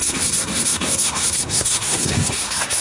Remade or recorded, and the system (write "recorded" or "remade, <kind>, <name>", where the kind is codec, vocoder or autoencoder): remade, codec, SNAC